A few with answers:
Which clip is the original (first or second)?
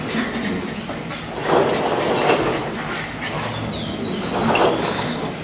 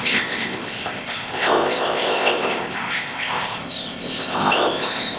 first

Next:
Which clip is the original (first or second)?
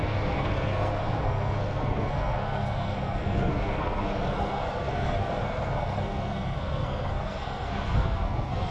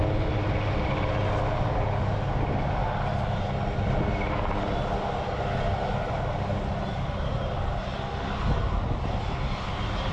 second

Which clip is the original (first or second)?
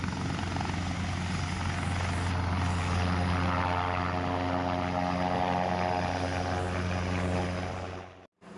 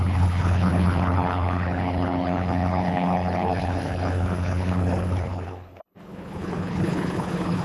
first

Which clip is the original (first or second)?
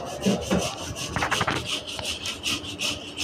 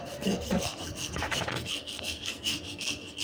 first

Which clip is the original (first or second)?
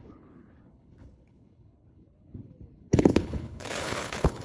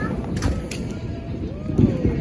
second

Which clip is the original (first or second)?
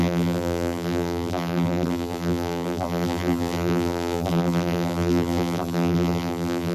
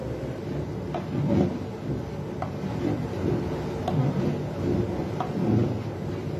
second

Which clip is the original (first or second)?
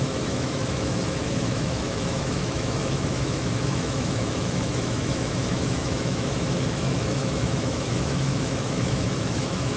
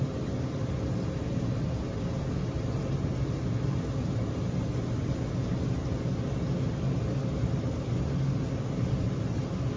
second